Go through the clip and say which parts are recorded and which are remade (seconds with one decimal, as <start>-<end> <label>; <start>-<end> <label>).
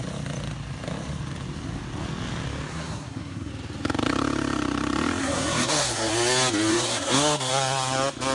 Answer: 0.0-2.7 recorded; 2.7-3.5 remade; 3.5-5.2 recorded; 5.2-6.1 remade; 6.1-6.7 recorded; 6.7-7.5 remade; 7.5-8.3 recorded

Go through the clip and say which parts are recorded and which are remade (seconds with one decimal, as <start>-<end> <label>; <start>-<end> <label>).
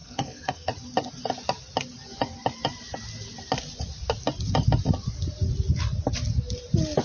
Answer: 0.0-0.7 remade; 0.7-7.0 recorded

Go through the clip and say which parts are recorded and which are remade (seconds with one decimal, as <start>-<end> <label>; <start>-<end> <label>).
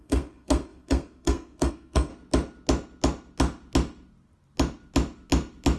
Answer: 0.0-2.1 remade; 2.1-5.8 recorded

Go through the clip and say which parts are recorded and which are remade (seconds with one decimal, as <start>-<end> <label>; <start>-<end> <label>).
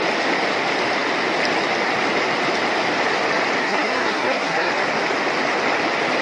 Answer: 0.0-3.6 recorded; 3.6-4.7 remade; 4.7-6.2 recorded